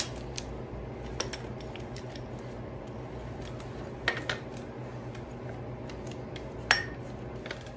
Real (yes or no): yes